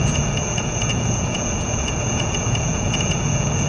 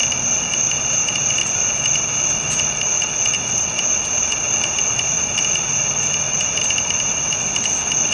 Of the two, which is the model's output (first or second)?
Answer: first